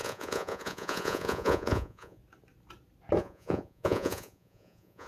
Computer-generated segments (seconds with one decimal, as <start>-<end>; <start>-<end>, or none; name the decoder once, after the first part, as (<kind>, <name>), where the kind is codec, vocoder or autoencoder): 0.0-2.2 (vocoder, Vocos); 3.2-5.1